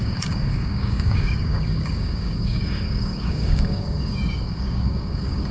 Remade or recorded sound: remade